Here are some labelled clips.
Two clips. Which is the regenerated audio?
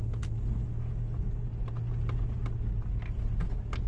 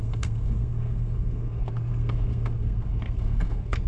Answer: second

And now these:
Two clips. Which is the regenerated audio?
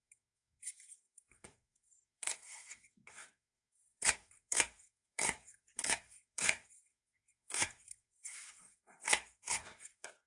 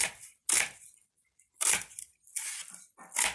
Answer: first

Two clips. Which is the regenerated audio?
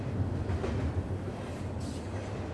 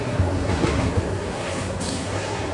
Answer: second